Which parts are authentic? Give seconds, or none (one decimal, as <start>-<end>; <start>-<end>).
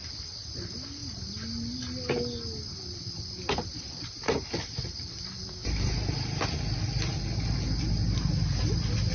0.0-5.6; 6.6-9.1